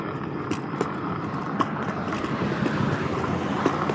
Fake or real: real